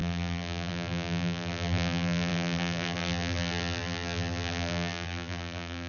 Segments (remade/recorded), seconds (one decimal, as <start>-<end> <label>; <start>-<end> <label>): 0.0-5.9 remade